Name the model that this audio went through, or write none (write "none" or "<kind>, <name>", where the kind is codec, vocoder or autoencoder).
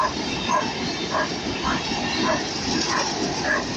none